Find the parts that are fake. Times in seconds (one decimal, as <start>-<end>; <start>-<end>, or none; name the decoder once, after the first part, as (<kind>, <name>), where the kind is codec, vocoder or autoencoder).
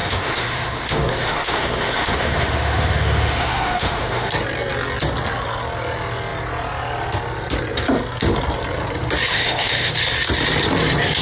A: 0.0-4.3 (autoencoder, DAC-VAE); 9.3-9.9